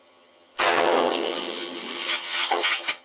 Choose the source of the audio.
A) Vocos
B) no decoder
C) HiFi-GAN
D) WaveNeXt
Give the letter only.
C